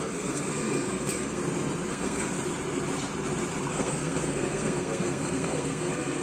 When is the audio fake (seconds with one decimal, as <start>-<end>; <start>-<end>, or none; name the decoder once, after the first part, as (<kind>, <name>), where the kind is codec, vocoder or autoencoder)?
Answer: 0.0-1.4 (codec, SNAC); 1.9-2.3; 3.7-6.2